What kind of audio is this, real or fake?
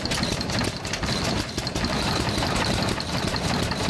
fake